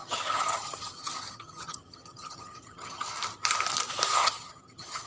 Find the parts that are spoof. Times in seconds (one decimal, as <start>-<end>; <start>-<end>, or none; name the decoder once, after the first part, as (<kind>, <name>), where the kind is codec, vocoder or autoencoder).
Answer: 0.0-3.1 (vocoder, HiFi-GAN); 4.2-5.1

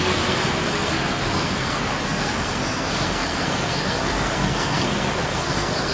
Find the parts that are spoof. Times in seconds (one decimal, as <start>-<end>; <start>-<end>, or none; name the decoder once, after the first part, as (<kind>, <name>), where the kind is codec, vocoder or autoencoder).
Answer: 0.0-5.9 (codec, SNAC)

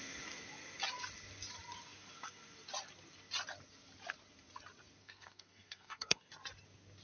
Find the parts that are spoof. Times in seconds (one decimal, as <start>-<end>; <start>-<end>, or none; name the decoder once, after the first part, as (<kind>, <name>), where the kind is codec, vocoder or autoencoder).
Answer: 5.0-6.3 (codec, SNAC)

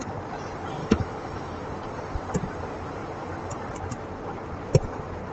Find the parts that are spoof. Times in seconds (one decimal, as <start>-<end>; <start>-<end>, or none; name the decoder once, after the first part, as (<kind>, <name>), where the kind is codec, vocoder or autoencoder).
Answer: 0.8-1.6 (autoencoder, DAC-VAE)

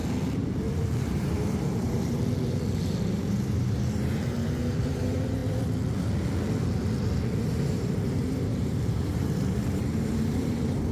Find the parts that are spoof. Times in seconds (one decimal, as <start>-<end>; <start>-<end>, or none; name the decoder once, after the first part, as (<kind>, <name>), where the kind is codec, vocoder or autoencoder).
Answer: 0.6-2.2 (vocoder, BigVGAN v2); 3.1-5.4; 7.4-10.9

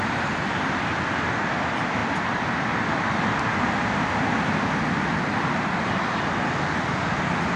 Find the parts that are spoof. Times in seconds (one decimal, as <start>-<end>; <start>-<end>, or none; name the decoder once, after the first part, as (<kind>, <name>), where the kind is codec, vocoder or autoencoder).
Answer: none

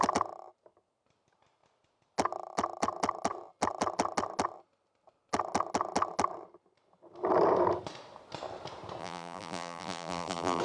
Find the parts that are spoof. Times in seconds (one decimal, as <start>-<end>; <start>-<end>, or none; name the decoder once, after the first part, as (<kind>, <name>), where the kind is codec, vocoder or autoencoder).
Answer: 9.0-10.6 (vocoder, BigVGAN v2)

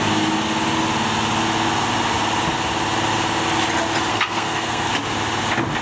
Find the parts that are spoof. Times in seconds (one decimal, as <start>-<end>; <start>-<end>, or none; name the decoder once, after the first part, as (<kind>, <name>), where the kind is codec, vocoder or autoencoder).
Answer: 4.1-4.9 (codec, SNAC)